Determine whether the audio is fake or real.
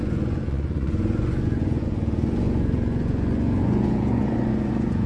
fake